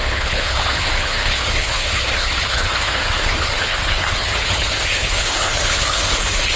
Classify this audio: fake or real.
fake